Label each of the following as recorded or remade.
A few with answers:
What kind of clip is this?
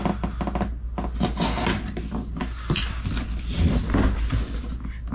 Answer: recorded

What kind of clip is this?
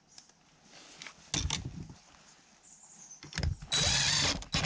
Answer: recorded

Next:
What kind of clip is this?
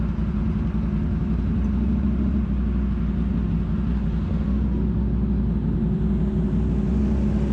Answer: recorded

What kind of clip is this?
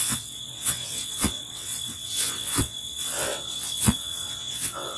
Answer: remade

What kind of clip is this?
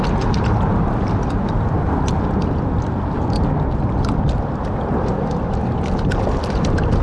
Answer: recorded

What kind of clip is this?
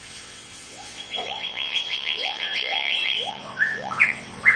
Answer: remade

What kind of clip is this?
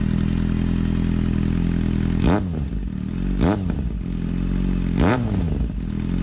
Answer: recorded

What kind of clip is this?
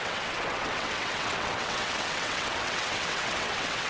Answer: remade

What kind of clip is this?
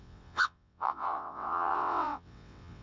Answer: remade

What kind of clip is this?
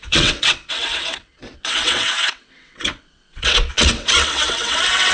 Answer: remade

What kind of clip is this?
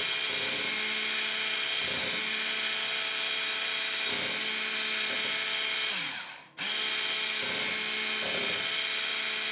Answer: recorded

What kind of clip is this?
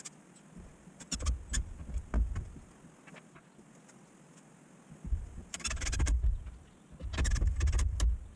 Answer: recorded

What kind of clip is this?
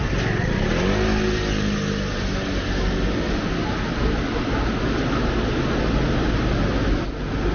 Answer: recorded